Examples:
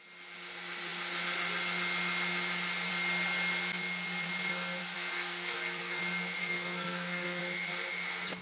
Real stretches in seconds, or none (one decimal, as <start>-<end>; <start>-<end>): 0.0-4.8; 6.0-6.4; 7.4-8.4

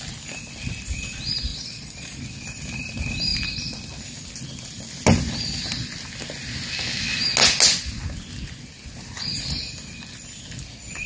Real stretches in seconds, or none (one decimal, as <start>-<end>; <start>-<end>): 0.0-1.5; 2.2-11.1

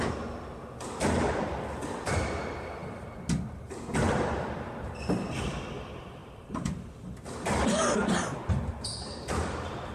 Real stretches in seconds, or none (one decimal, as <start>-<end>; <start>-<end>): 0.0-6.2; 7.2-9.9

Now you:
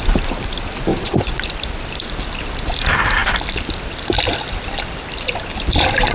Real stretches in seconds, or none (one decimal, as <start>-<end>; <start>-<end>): 0.0-0.9; 1.4-6.1

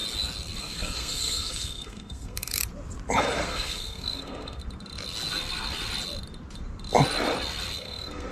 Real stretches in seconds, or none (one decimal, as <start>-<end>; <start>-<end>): 0.0-0.6; 2.6-3.2; 4.6-7.8

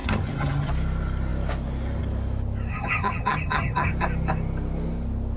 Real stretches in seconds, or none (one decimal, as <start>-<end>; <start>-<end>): 0.7-2.7; 3.9-5.4

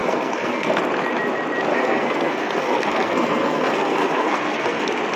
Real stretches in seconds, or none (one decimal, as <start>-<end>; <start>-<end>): 0.8-1.7; 4.8-5.2

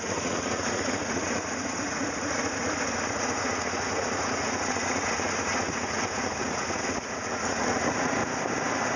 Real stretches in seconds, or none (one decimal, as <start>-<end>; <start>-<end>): 8.2-9.0